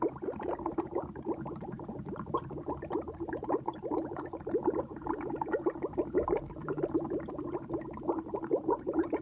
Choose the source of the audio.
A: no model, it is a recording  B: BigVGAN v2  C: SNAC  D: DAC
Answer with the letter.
B